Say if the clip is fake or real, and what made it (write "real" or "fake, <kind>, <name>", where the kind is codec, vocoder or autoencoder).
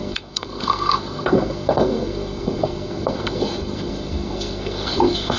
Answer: fake, codec, SNAC